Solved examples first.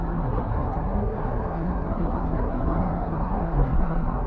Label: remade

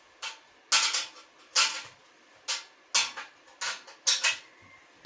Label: recorded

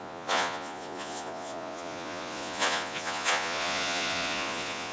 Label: remade